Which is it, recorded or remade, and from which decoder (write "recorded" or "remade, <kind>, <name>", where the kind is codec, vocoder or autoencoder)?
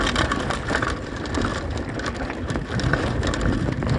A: recorded